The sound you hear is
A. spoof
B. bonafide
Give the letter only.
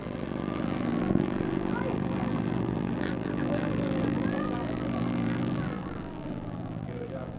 A